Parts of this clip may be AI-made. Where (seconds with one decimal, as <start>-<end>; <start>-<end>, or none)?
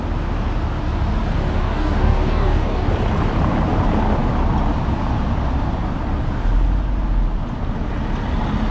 1.6-2.9